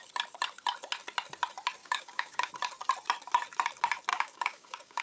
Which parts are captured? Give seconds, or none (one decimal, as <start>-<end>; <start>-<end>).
0.0-1.8; 2.5-4.1